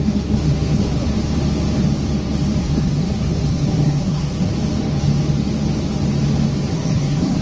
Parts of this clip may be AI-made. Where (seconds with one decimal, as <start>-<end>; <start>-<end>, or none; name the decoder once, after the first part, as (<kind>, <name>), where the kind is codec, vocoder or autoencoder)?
0.0-1.1 (codec, SNAC); 2.6-4.5; 6.7-7.4